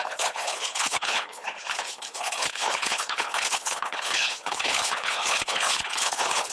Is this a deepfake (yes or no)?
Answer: yes